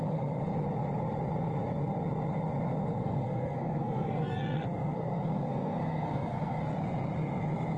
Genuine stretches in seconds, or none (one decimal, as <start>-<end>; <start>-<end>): 0.0-3.0; 6.6-7.8

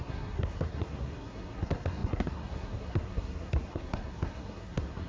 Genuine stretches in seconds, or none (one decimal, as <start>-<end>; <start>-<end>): none

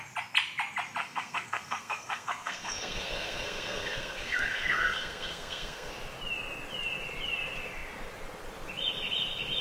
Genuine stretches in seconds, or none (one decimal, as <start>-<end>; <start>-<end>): 0.0-1.0; 5.9-9.6

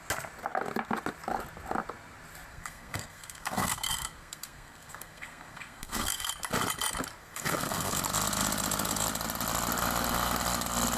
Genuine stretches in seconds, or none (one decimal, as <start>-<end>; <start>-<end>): 0.0-2.5; 6.3-7.2; 8.0-11.0

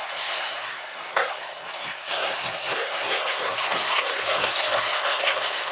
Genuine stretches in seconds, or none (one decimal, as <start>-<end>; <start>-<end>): none

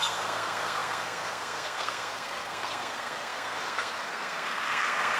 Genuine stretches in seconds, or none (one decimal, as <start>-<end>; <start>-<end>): none

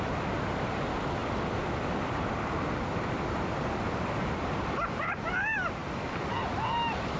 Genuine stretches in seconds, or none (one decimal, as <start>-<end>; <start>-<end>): 0.0-7.2